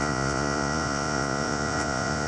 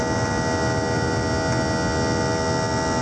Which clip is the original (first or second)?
second